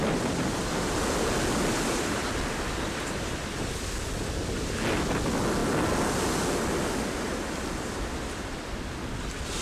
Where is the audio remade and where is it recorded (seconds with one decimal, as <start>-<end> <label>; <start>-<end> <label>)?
0.0-9.6 recorded